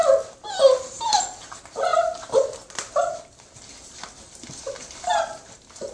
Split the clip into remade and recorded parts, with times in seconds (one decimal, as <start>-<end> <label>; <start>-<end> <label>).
0.0-5.9 recorded